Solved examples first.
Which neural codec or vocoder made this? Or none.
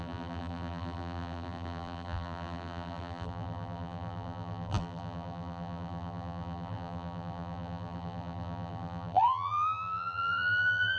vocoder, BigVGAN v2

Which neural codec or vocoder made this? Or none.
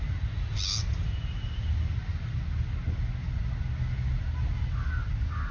none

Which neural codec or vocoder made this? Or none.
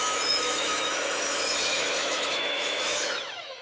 autoencoder, DAC-VAE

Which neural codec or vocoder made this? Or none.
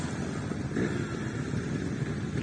none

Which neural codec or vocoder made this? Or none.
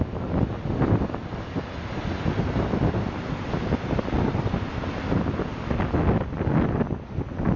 none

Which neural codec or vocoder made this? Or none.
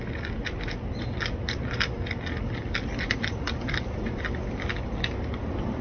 none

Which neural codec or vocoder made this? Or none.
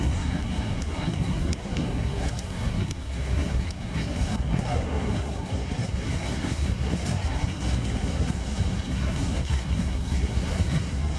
codec, SNAC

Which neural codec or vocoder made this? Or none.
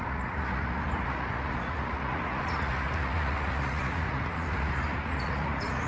vocoder, Vocos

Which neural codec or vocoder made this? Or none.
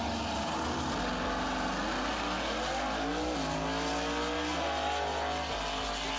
none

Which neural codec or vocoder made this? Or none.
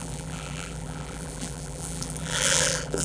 vocoder, BigVGAN v2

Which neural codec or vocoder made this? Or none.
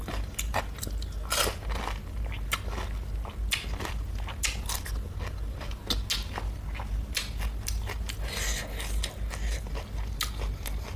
none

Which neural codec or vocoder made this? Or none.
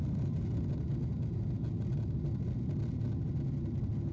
none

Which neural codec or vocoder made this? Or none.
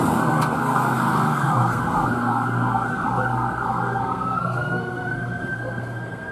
codec, SNAC